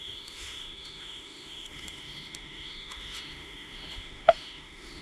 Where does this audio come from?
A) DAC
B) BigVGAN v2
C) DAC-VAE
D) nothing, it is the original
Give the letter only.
C